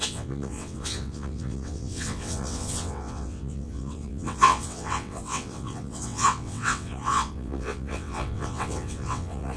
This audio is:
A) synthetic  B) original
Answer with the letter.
A